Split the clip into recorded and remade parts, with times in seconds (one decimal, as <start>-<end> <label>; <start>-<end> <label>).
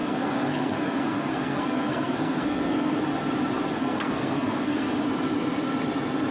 0.0-3.0 remade; 3.0-3.8 recorded; 3.8-4.9 remade; 4.9-6.3 recorded